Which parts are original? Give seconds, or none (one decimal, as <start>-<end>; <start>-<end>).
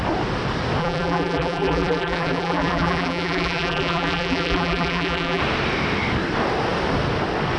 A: 0.0-0.8; 5.4-7.6